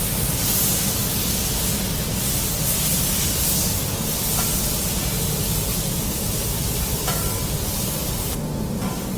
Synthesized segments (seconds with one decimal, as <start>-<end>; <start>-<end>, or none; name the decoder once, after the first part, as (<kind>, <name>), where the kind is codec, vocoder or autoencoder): 5.7-8.0 (vocoder, BigVGAN v2)